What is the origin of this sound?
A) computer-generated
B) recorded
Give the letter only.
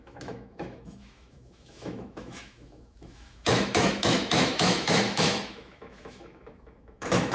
A